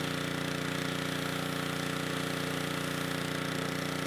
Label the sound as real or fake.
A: real